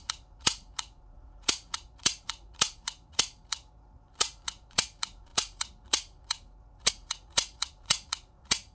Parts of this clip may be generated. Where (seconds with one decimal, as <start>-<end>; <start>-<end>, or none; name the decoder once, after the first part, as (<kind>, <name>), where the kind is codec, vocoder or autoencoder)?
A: 0.0-8.7 (vocoder, Vocos)